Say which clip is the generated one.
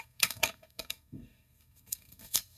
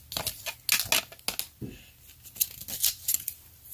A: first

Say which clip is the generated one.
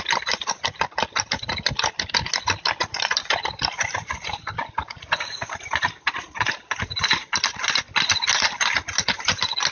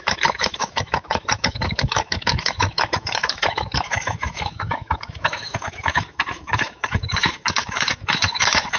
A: second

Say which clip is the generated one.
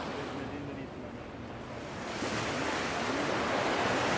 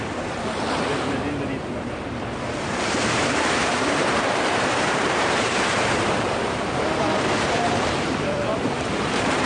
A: second